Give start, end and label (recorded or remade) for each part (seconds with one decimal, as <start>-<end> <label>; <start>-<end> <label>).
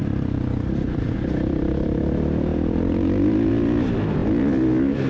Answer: 0.0-4.2 remade; 4.2-5.1 recorded